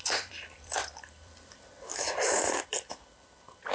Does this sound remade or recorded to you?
remade